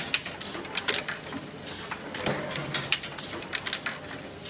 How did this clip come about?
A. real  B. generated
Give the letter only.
A